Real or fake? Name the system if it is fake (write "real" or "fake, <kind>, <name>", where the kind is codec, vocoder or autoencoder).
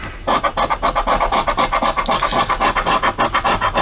real